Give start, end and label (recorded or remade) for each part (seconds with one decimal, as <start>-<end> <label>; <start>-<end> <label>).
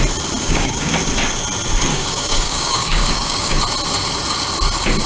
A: 0.0-0.4 recorded; 0.4-0.9 remade; 0.9-1.9 recorded; 1.9-3.6 remade; 3.6-5.1 recorded